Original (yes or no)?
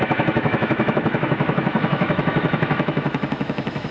no